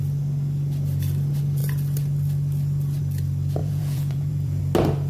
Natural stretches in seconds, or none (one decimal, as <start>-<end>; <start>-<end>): 0.0-3.6; 4.6-5.1